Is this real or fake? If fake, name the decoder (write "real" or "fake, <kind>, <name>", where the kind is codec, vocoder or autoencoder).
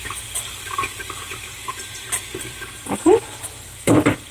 fake, vocoder, BigVGAN v2